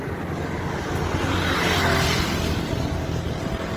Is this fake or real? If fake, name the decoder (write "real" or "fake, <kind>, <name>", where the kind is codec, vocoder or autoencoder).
real